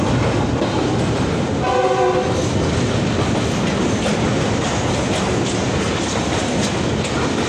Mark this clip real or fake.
real